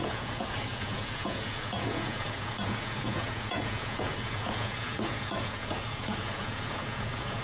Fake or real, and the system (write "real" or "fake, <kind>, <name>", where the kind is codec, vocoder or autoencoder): fake, vocoder, Vocos